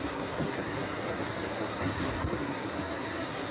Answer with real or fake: fake